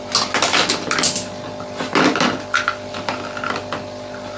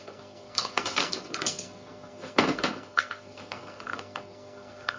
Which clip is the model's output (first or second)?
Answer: second